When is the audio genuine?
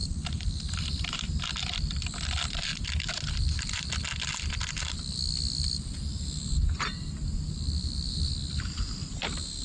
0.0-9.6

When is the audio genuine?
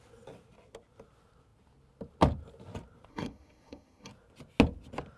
0.0-3.1; 4.1-5.2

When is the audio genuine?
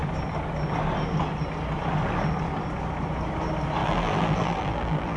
0.0-3.8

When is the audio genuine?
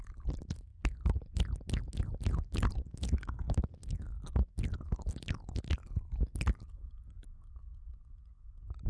0.0-8.9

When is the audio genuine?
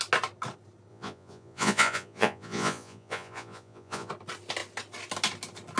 0.0-0.9; 4.1-5.8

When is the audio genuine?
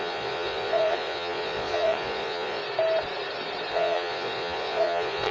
2.6-3.7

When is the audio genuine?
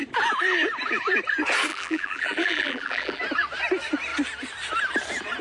0.0-1.7; 3.2-5.4